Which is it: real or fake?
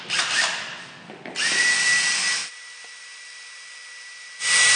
real